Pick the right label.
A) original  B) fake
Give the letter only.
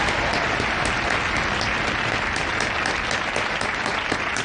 A